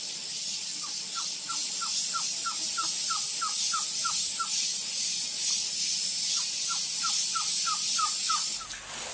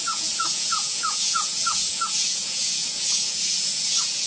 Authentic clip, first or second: first